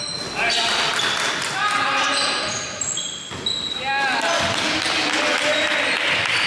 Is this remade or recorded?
recorded